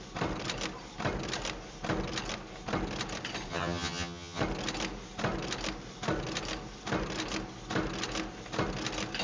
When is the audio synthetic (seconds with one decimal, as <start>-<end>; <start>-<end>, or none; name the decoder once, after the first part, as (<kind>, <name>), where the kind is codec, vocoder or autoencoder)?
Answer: 3.5-4.4 (vocoder, HiFi-GAN)